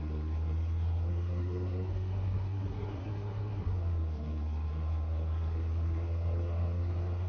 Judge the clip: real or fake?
fake